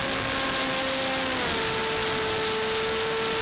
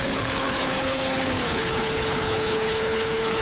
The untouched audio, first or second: first